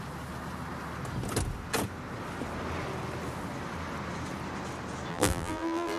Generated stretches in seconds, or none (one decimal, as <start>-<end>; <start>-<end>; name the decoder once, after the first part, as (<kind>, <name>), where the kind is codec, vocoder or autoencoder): 5.1-6.0 (vocoder, BigVGAN v2)